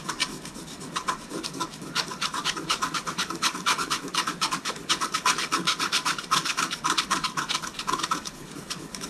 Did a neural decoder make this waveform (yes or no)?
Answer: yes